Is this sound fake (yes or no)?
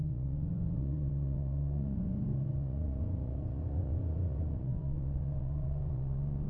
yes